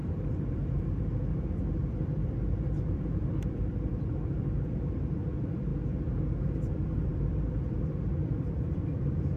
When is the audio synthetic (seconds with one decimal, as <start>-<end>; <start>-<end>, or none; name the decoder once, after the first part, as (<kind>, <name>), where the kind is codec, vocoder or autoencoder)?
0.0-5.7 (vocoder, BigVGAN v2); 6.4-9.4